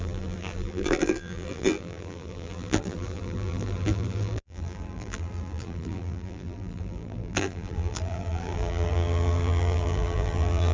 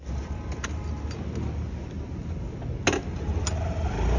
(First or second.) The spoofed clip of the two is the first